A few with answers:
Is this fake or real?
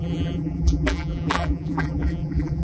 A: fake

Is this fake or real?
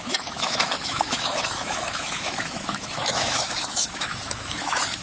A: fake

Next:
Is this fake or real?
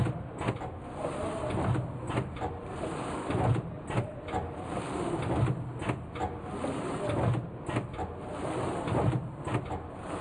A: real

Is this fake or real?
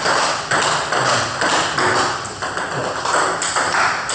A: real